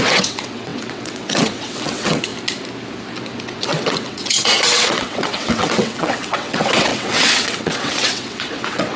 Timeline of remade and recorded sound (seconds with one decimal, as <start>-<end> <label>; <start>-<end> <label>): 0.0-2.3 remade; 2.3-3.4 recorded; 3.4-9.0 remade